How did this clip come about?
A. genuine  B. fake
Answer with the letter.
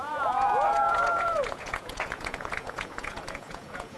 B